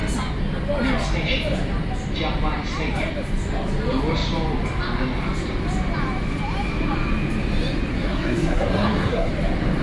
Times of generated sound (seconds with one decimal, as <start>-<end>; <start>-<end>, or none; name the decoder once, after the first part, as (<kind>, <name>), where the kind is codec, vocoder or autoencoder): 7.9-9.3 (codec, SNAC)